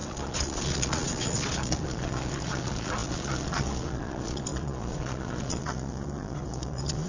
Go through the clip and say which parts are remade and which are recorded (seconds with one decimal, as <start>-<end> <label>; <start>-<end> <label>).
0.0-7.1 remade